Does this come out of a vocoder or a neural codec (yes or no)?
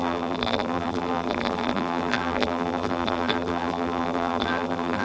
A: yes